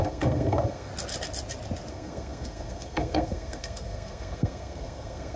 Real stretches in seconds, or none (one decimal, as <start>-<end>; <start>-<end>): 0.9-1.9